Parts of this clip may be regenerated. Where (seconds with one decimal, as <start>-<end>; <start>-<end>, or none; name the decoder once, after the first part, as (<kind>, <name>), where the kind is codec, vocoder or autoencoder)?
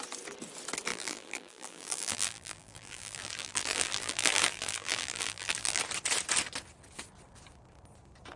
0.9-5.8 (vocoder, BigVGAN v2)